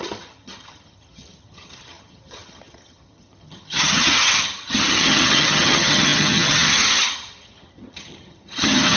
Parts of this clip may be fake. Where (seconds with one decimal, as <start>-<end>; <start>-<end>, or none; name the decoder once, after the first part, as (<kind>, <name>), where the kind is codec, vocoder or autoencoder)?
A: 0.0-9.0 (vocoder, HiFi-GAN)